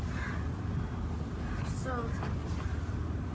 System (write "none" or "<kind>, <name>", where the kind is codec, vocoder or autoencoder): none